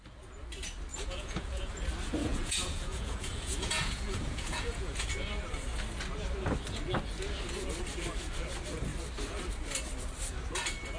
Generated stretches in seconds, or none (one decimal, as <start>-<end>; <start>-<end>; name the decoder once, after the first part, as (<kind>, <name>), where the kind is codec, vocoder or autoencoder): 0.9-1.7 (vocoder, Vocos); 2.2-5.1